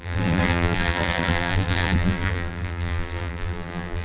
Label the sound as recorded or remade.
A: remade